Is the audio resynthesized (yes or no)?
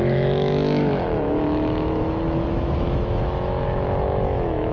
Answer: yes